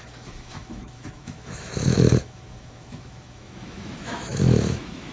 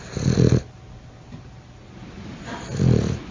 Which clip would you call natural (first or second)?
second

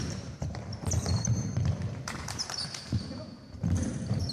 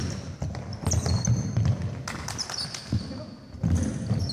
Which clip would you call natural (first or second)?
second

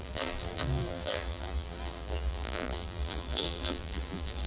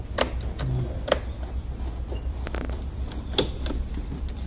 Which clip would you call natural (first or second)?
second